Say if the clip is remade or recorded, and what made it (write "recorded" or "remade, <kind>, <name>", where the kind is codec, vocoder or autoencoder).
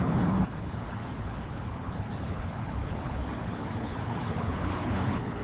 remade, codec, HILCodec